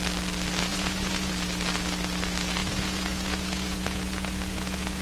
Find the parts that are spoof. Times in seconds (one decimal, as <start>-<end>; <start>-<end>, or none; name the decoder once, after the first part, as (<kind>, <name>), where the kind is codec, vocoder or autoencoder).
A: 0.7-1.3 (vocoder, Vocos); 2.6-5.0